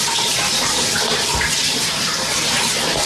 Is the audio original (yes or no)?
no